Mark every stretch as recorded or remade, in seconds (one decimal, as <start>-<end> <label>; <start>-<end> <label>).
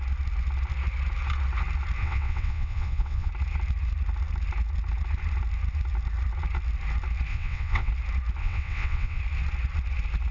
0.0-2.0 recorded; 2.0-3.3 remade; 3.3-7.3 recorded; 7.3-7.9 remade; 7.9-8.4 recorded; 8.4-9.2 remade; 9.2-10.3 recorded